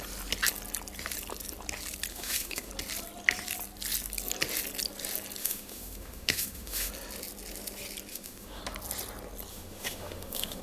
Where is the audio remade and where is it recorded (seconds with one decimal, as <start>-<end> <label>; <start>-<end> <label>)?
0.0-2.1 recorded; 2.1-2.7 remade; 2.7-5.4 recorded; 5.4-6.9 remade; 6.9-8.1 recorded; 8.1-8.6 remade; 8.6-9.5 recorded; 9.5-10.6 remade